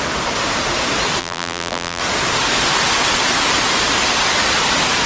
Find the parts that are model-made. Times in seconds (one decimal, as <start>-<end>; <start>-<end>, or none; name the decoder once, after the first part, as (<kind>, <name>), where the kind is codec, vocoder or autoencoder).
1.2-2.0 (vocoder, BigVGAN v2)